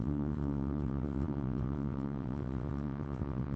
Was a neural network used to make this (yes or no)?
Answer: yes